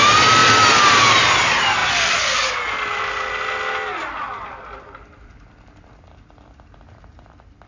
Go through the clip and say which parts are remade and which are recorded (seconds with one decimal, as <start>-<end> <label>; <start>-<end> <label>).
0.0-1.8 recorded; 1.8-2.5 remade; 2.5-7.7 recorded